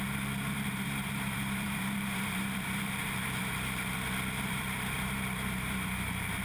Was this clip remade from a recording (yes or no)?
yes